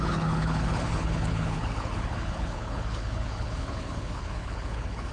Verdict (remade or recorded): remade